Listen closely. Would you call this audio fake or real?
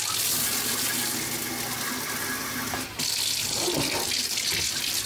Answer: real